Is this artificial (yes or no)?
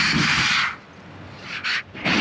no